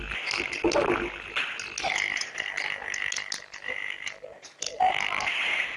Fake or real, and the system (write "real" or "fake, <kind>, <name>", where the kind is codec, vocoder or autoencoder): real